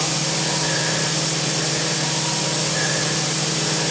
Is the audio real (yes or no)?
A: yes